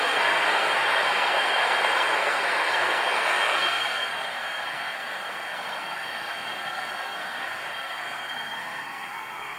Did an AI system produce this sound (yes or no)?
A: yes